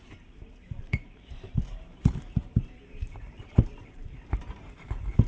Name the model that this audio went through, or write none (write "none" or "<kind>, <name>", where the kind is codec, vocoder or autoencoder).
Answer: vocoder, BigVGAN v2